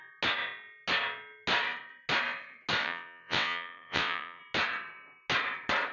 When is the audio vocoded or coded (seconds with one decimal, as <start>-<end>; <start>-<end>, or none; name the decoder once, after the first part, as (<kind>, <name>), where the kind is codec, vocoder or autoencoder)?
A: 2.8-4.4 (vocoder, WaveNeXt)